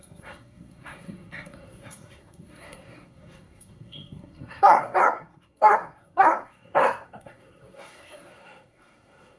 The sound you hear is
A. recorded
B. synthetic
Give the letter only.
B